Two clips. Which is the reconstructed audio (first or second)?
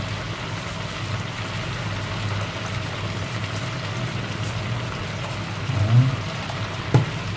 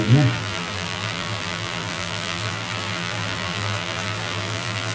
second